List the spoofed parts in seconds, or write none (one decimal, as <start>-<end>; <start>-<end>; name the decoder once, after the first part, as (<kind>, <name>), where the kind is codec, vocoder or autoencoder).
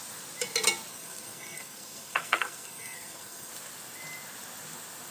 0.9-3.5 (codec, SNAC)